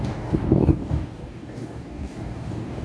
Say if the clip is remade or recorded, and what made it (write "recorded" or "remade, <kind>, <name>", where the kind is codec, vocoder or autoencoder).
remade, codec, DAC